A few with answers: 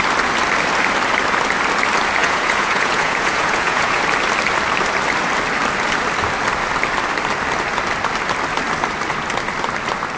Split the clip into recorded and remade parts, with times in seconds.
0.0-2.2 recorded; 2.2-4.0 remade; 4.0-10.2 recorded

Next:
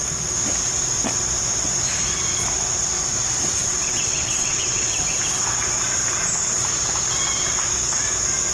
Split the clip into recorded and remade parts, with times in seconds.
0.0-3.6 recorded; 3.6-5.0 remade; 5.0-8.5 recorded

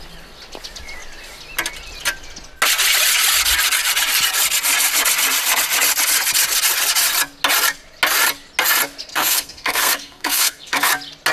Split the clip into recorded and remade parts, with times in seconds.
0.0-9.1 recorded; 9.1-10.9 remade; 10.9-11.3 recorded

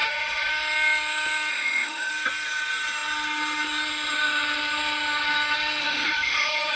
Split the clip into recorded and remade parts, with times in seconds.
0.0-0.5 remade; 0.5-1.5 recorded; 1.5-2.1 remade; 2.1-5.8 recorded; 5.8-6.8 remade

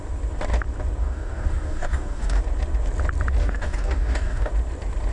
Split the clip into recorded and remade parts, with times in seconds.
0.0-1.0 recorded; 1.0-2.4 remade; 2.4-3.4 recorded; 3.4-4.5 remade; 4.5-5.1 recorded

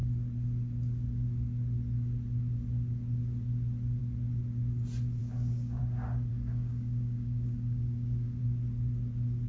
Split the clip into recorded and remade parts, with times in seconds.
0.0-5.2 recorded; 5.2-5.8 remade; 5.8-6.3 recorded; 6.3-8.4 remade; 8.4-9.5 recorded

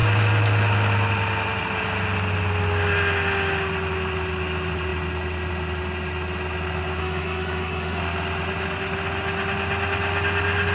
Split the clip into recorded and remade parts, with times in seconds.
0.0-7.0 recorded; 7.0-8.0 remade; 8.0-10.7 recorded

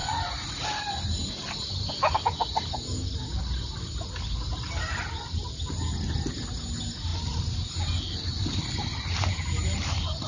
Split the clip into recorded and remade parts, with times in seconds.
0.0-10.3 recorded